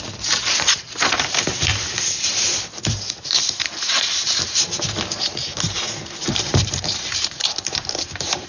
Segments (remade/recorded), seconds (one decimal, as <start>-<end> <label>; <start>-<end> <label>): 0.0-8.5 remade